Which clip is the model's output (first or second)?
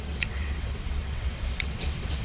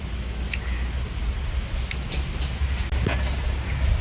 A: first